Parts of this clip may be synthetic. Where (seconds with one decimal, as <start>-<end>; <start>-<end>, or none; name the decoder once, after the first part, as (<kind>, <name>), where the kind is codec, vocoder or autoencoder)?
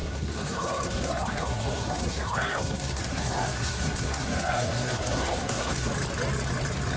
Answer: 0.0-5.9 (codec, SNAC)